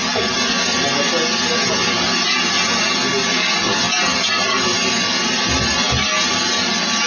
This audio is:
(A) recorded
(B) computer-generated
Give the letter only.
A